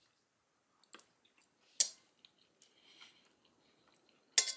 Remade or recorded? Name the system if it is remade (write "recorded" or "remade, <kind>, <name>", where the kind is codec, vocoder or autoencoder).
recorded